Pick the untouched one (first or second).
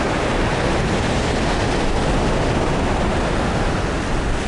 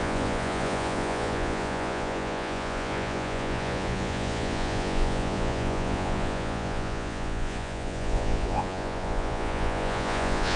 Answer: first